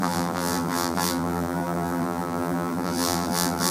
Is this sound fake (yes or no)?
yes